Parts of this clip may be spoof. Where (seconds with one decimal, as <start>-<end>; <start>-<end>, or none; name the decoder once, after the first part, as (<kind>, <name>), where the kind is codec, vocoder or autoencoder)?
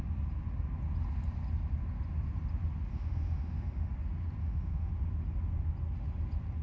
2.9-3.9 (autoencoder, DAC-VAE); 4.4-4.9